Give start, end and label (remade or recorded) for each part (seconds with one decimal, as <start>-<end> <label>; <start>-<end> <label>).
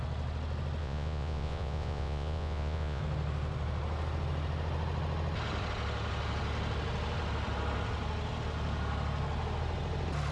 0.0-0.8 recorded; 0.8-3.0 remade; 3.0-10.3 recorded